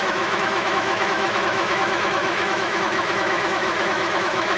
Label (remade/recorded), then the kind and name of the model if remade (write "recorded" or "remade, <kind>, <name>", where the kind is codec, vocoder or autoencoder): remade, autoencoder, DAC-VAE